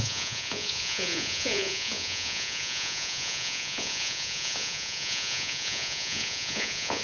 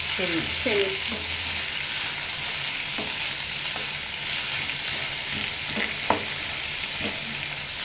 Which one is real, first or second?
second